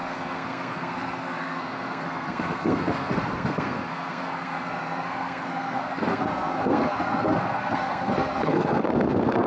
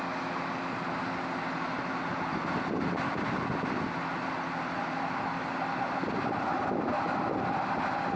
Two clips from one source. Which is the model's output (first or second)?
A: first